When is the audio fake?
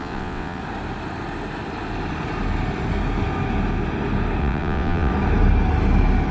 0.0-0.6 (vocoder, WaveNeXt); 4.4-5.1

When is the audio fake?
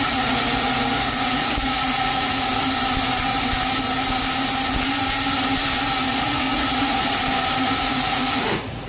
0.0-2.5 (vocoder, Vocos); 6.1-7.2; 7.8-8.9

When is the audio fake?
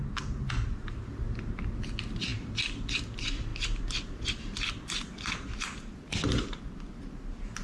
3.5-6.6 (vocoder, BigVGAN v2)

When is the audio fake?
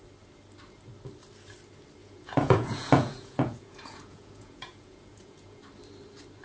2.0-5.6 (vocoder, Vocos)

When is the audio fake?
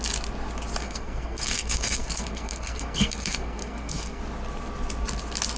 0.8-4.2 (codec, SNAC)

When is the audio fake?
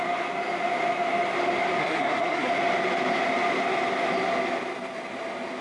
1.8-2.5 (codec, SNAC)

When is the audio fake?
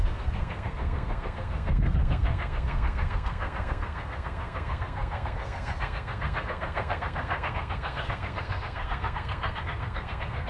0.0-10.5 (codec, SNAC)